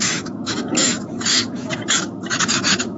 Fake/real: fake